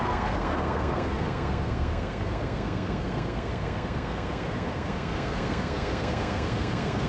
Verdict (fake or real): fake